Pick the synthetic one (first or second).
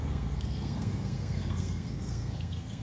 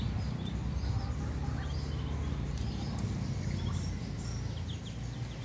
first